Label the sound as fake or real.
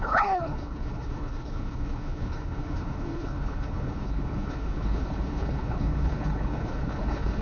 fake